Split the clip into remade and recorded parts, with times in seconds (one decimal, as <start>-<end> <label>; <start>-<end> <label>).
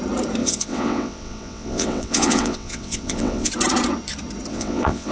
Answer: 0.0-0.4 recorded; 0.4-3.5 remade; 3.5-4.5 recorded; 4.5-5.1 remade